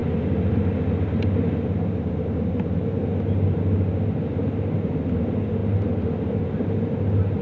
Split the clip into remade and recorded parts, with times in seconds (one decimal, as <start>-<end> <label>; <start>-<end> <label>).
0.0-7.4 recorded